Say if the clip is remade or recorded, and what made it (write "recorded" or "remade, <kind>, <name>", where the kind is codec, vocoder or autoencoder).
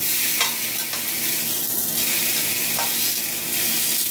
recorded